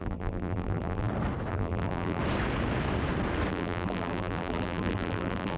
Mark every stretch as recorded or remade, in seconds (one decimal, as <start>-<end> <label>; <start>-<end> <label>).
0.0-1.1 remade; 1.1-1.5 recorded; 1.5-2.2 remade; 2.2-3.5 recorded; 3.5-5.6 remade